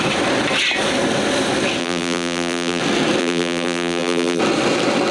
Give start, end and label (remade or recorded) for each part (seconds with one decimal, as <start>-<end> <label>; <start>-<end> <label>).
0.0-1.8 recorded; 1.8-2.8 remade; 2.8-3.2 recorded; 3.2-4.4 remade; 4.4-5.1 recorded